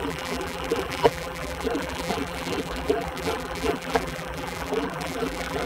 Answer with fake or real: fake